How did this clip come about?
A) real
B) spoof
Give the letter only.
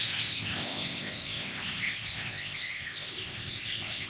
B